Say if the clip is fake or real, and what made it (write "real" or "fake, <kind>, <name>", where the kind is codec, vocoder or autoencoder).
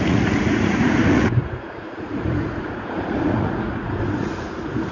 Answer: fake, vocoder, Vocos